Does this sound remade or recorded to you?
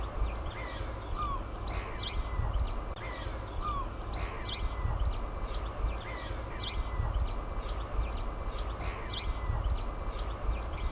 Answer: recorded